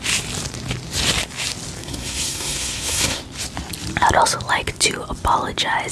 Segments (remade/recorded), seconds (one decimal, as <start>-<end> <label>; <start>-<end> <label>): 0.0-1.8 recorded; 1.8-3.2 remade; 3.2-5.9 recorded